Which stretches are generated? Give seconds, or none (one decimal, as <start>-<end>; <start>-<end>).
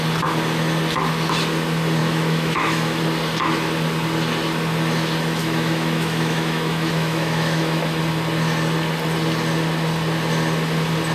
2.0-3.0; 5.4-8.0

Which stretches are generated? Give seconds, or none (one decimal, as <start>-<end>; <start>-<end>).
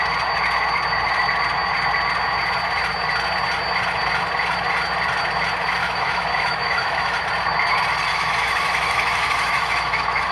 5.8-7.2; 8.1-10.3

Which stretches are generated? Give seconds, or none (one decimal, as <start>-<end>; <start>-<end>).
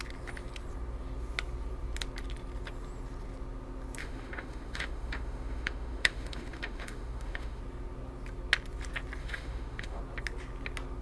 4.0-7.6; 9.2-10.0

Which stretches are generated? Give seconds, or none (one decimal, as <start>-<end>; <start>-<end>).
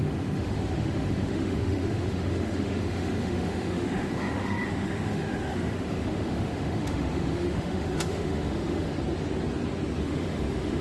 0.0-8.9; 10.0-10.8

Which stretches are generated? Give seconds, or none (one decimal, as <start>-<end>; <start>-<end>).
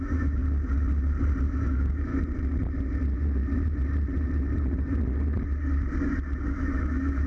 0.0-0.4; 1.4-2.1; 6.5-7.3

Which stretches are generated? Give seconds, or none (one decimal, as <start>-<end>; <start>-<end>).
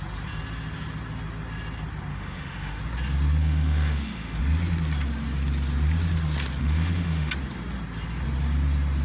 2.1-2.8; 3.4-4.4; 6.6-7.3